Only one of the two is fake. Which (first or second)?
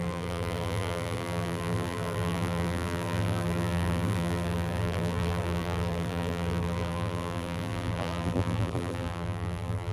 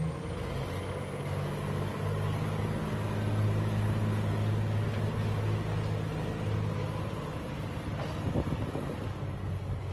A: first